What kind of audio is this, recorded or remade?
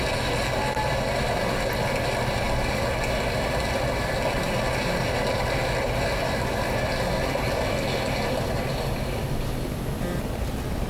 recorded